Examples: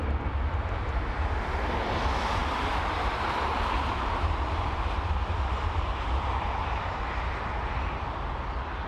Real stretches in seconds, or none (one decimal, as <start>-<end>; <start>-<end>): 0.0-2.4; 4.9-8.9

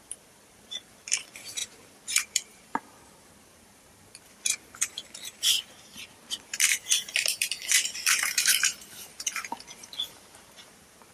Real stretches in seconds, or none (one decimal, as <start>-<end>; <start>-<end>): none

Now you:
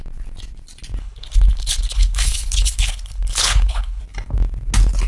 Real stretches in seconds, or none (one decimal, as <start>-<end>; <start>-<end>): 0.0-1.0; 4.0-5.1

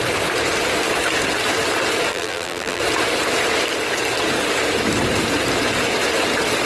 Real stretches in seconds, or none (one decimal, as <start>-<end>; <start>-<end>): 0.0-2.1; 2.8-6.7